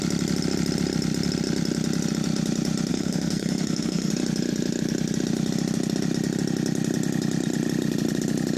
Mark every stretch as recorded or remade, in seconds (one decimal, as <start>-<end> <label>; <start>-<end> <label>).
0.0-2.9 recorded; 2.9-4.1 remade; 4.1-8.6 recorded